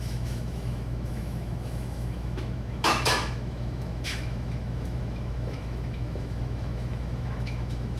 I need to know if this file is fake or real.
fake